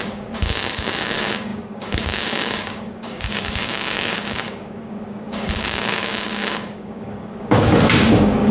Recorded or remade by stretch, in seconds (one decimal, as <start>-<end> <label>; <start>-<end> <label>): 0.0-8.5 remade